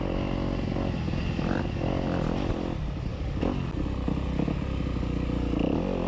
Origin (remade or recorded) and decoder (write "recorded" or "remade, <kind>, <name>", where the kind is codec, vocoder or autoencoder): recorded